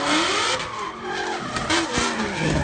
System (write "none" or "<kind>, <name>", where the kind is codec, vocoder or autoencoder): none